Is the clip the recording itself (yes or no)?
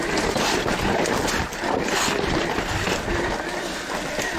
yes